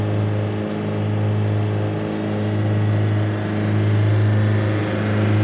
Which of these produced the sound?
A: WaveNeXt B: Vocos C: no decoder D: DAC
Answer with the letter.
C